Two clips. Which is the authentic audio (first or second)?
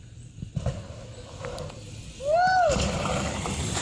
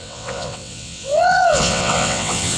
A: first